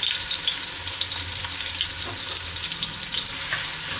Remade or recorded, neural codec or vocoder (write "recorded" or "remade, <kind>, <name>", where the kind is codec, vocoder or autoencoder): recorded